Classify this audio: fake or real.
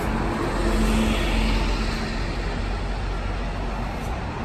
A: real